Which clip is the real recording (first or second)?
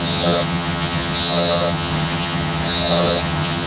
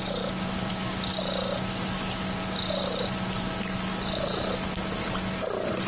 second